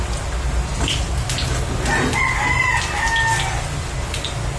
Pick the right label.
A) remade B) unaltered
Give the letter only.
B